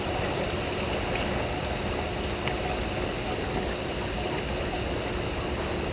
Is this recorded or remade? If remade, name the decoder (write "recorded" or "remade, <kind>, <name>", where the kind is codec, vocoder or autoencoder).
recorded